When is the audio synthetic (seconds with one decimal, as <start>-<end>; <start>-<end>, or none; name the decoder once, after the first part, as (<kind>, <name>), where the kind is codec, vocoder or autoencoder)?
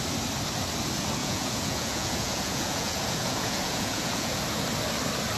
1.2-4.4 (vocoder, Vocos)